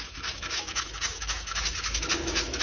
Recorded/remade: remade